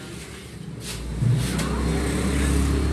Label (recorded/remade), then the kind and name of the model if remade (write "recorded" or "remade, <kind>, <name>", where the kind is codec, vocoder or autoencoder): recorded